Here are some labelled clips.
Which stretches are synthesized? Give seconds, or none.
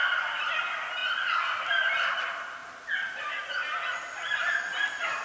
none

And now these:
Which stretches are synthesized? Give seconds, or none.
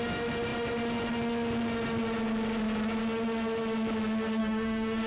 4.4-5.1 (autoencoder, DAC-VAE)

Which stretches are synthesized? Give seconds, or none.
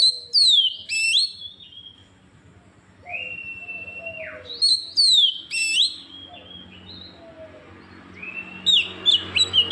none